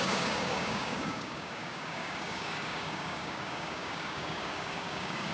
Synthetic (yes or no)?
yes